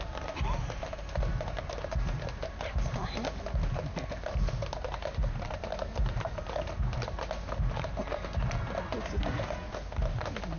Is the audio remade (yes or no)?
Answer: no